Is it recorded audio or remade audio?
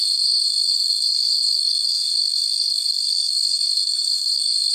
remade